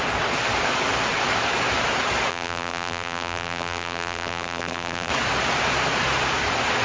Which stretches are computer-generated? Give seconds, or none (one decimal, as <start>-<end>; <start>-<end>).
2.3-5.1